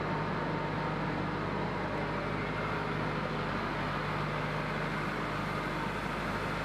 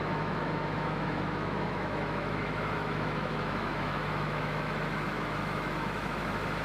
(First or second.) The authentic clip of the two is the first